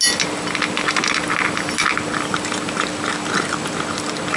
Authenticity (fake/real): real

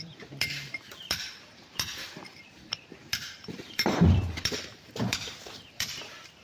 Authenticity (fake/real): fake